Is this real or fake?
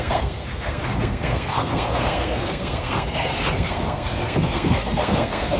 fake